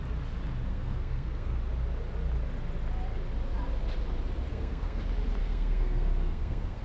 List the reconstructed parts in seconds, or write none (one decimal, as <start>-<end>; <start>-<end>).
0.7-1.6; 4.5-5.0; 5.4-6.8